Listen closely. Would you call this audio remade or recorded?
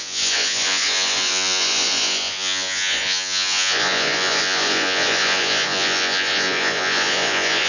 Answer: remade